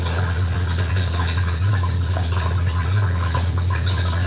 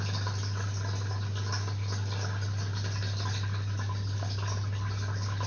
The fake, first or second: first